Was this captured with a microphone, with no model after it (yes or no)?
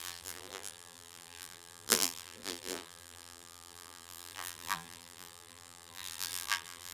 no